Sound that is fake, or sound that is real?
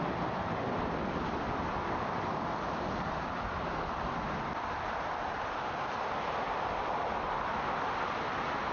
real